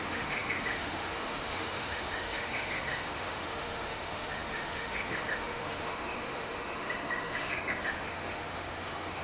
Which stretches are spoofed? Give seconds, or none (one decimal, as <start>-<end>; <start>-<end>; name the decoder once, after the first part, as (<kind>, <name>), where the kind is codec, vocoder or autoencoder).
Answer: 0.0-9.2 (autoencoder, DAC-VAE)